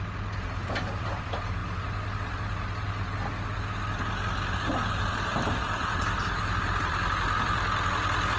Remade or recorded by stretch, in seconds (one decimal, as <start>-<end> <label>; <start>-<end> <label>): 0.0-1.6 remade; 1.6-4.9 recorded; 4.9-8.4 remade